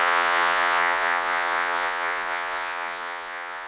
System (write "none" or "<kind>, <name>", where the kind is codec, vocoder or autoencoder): vocoder, Vocos